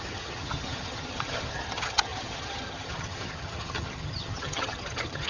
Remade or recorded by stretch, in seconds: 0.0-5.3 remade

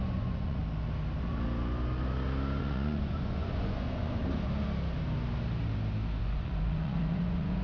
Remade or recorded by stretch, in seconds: 0.0-0.6 remade; 0.6-2.6 recorded; 2.6-4.2 remade; 4.2-6.2 recorded; 6.2-7.6 remade

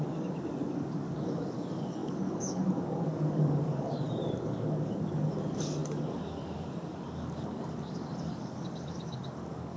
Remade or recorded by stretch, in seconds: 0.0-9.8 remade